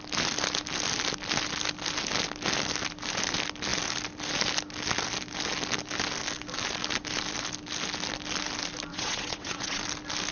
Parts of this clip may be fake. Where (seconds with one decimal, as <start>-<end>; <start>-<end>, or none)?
8.9-9.8